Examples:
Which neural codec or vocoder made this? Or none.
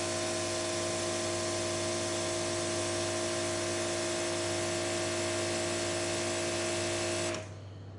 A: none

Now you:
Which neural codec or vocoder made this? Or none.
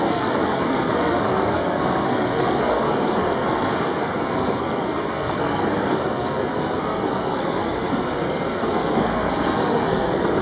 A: codec, SNAC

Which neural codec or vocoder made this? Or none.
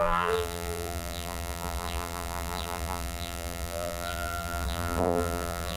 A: vocoder, BigVGAN v2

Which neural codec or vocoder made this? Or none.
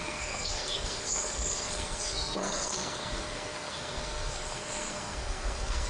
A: codec, SNAC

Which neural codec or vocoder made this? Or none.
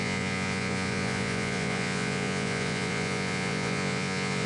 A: vocoder, Vocos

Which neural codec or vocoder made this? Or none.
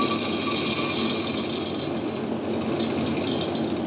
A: none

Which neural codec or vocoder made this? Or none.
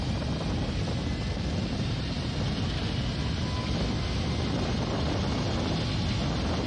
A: none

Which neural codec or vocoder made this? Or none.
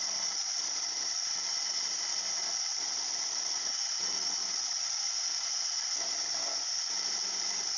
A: none